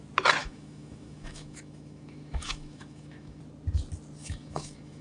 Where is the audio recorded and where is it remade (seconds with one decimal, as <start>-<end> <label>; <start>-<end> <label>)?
0.0-0.4 recorded; 0.4-3.4 remade; 3.4-4.2 recorded; 4.2-5.0 remade